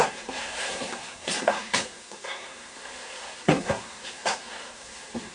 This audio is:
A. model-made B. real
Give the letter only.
A